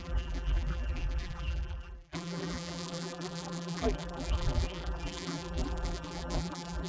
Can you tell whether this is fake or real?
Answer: fake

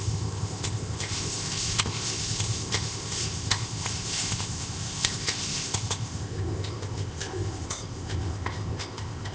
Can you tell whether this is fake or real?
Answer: fake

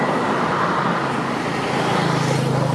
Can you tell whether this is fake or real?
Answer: real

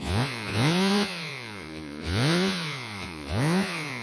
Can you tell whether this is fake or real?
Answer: fake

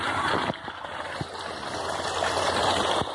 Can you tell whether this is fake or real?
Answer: real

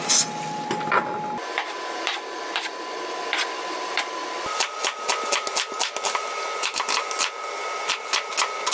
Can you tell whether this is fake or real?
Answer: real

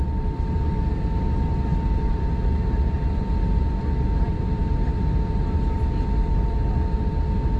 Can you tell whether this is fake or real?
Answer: real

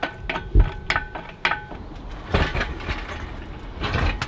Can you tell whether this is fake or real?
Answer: real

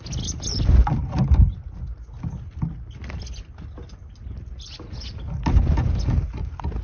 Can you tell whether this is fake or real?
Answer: real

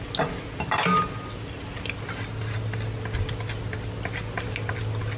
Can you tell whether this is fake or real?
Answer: real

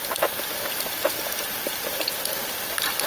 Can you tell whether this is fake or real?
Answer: real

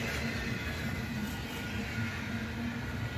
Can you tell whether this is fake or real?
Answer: real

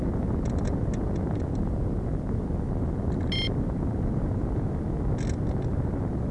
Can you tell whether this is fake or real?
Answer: real